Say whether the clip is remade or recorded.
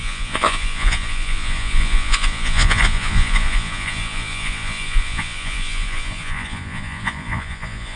remade